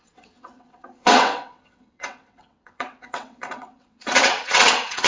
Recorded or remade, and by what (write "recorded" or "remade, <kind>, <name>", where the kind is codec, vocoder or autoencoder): remade, vocoder, WaveNeXt